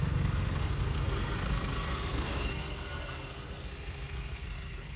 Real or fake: fake